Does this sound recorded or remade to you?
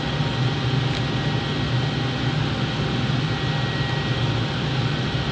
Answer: recorded